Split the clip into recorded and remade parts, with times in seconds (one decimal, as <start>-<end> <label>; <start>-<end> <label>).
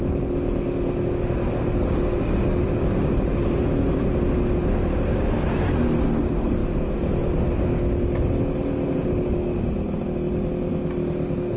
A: 0.0-11.6 recorded